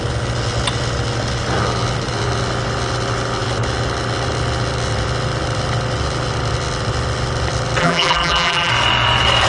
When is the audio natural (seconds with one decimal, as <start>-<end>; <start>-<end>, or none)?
0.0-7.8; 8.7-9.5